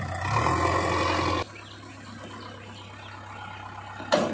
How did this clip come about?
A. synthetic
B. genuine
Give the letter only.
B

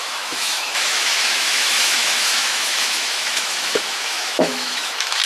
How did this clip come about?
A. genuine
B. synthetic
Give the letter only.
B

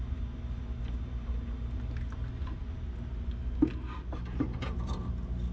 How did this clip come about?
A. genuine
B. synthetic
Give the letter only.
A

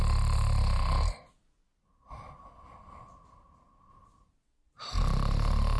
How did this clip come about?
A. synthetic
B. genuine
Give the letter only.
B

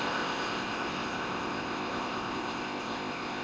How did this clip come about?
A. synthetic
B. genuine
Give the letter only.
A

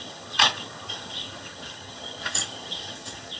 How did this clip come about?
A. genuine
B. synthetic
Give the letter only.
B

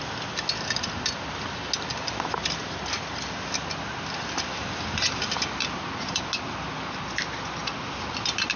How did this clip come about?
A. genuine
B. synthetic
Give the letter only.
A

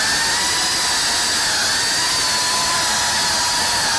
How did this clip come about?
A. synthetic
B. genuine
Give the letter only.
B